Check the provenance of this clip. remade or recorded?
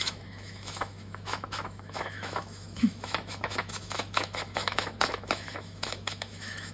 remade